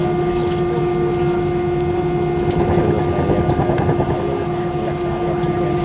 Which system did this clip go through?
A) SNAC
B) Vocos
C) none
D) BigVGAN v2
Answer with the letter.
C